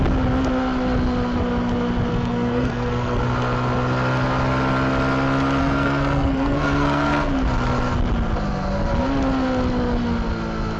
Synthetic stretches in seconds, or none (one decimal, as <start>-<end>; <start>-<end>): 2.1-3.2; 5.6-7.3